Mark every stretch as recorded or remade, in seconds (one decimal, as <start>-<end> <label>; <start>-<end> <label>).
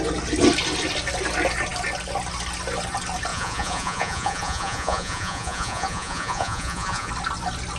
0.0-3.3 recorded; 3.3-7.1 remade; 7.1-7.8 recorded